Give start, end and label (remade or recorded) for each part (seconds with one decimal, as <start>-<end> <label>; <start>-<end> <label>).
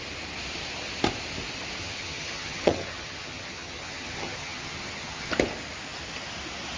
0.0-1.8 recorded; 1.8-5.3 remade; 5.3-6.8 recorded